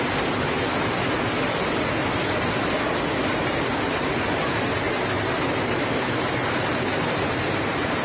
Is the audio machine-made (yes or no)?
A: no